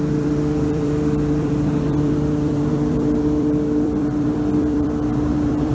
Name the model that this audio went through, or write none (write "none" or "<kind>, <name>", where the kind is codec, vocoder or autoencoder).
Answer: vocoder, BigVGAN v2